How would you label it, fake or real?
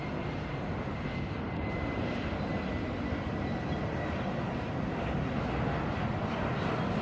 real